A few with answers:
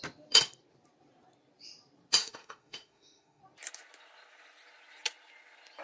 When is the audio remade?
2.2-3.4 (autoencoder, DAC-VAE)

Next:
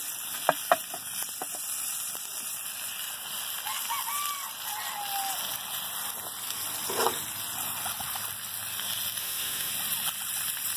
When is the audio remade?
9.2-9.7 (autoencoder, DAC-VAE)

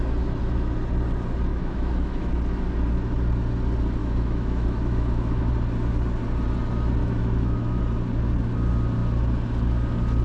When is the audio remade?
1.5-2.3 (autoencoder, DAC-VAE); 4.0-5.5; 7.0-7.8

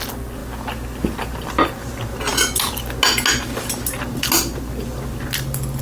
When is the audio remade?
none

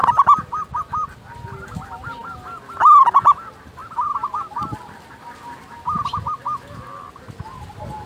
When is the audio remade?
none

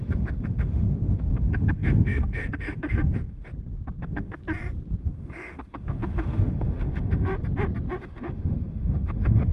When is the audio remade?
0.0-3.5 (autoencoder, DAC-VAE); 4.0-4.4; 5.0-7.3; 8.0-9.5

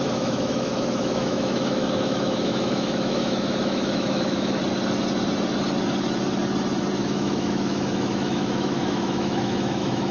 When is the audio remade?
0.0-4.6 (autoencoder, DAC-VAE); 7.0-10.1

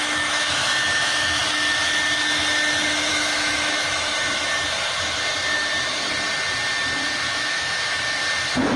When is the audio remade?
0.0-1.4 (autoencoder, DAC-VAE); 3.1-4.1; 7.2-8.2